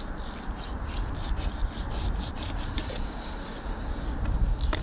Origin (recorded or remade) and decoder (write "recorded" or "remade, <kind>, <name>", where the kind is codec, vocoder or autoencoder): recorded